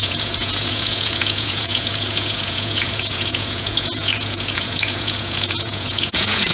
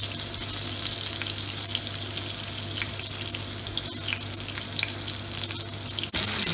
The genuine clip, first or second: second